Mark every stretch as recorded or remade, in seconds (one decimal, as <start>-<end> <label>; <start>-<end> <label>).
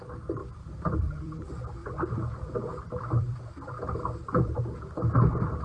0.0-0.4 recorded; 0.4-1.4 remade; 1.4-1.8 recorded; 1.8-4.6 remade; 4.6-5.6 recorded